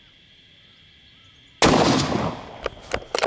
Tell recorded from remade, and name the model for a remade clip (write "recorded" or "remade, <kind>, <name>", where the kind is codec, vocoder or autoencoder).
recorded